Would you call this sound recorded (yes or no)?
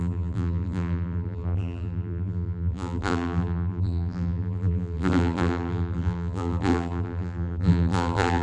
no